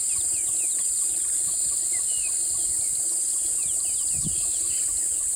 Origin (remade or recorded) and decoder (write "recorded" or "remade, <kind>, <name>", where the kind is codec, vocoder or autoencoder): recorded